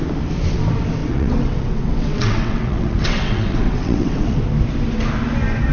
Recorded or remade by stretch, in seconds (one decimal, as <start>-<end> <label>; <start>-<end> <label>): 0.0-1.0 recorded; 1.0-4.4 remade; 4.4-5.7 recorded